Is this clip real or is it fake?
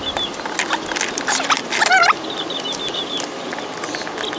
real